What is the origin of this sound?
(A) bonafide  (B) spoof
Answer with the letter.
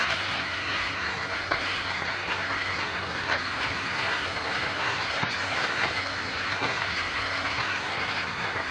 B